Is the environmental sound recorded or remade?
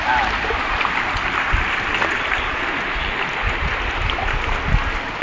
recorded